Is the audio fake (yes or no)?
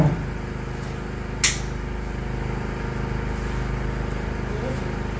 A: no